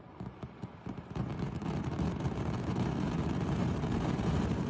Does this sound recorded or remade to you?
remade